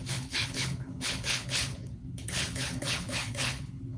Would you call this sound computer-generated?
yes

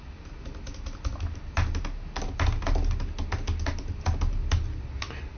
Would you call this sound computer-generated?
no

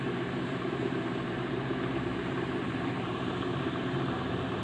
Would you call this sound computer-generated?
yes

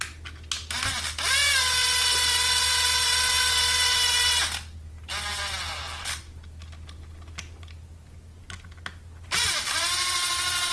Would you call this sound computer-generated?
no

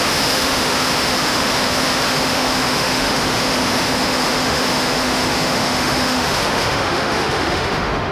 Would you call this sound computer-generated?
yes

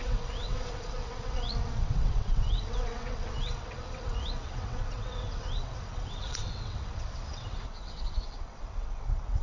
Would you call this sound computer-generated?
yes